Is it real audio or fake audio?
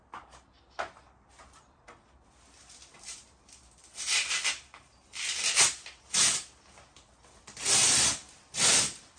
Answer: real